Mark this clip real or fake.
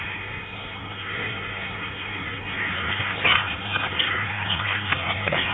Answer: fake